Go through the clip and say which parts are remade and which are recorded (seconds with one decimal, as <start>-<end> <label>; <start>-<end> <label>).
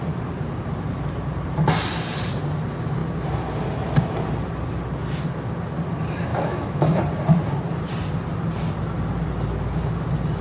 0.0-6.3 recorded; 6.3-7.0 remade; 7.0-10.4 recorded